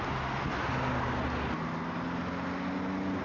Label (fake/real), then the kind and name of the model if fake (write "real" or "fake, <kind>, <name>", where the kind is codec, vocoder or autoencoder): real